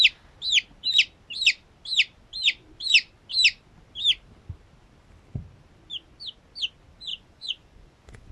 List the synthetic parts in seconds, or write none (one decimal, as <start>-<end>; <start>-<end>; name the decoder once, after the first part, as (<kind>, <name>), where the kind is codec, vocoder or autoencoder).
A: 7.1-8.3 (vocoder, Vocos)